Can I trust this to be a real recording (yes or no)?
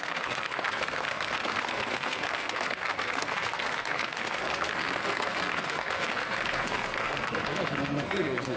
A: no